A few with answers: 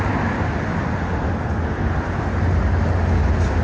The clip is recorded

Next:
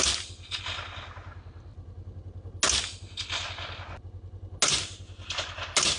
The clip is recorded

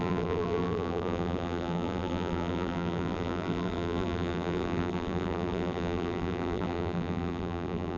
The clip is remade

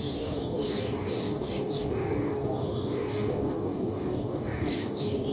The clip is remade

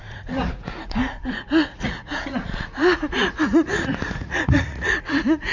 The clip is remade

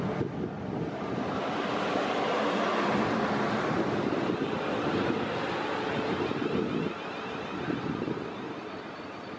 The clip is recorded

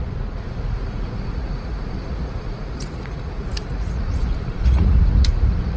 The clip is remade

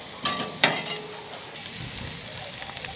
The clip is recorded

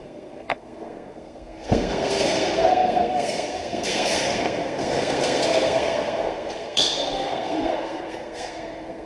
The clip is remade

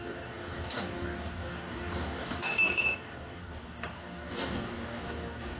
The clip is remade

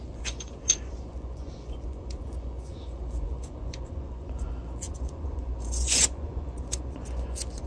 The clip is remade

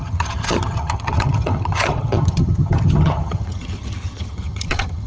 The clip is remade